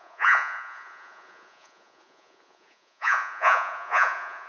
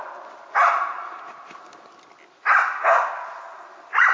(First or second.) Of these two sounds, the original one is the second